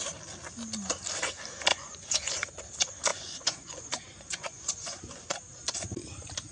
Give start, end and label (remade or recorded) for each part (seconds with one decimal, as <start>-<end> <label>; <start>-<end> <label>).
0.0-1.7 recorded; 1.7-2.6 remade; 2.6-3.1 recorded; 3.1-5.3 remade; 5.3-6.5 recorded